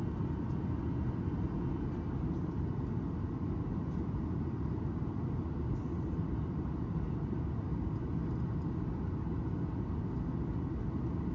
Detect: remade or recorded recorded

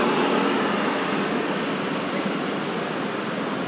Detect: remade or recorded recorded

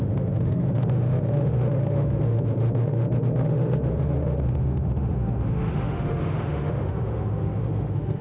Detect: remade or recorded remade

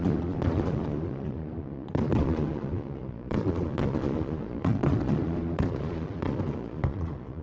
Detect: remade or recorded remade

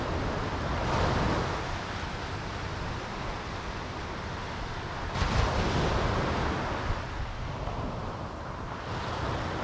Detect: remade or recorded recorded